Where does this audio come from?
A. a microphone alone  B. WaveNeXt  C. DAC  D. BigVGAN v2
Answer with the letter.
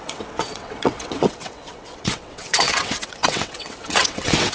B